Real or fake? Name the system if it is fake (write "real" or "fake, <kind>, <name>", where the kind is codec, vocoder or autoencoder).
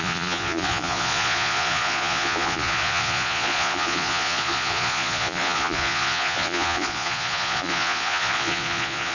fake, vocoder, Vocos